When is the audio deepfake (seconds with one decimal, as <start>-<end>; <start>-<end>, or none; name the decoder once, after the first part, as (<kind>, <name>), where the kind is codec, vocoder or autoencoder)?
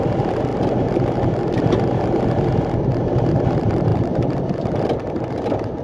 none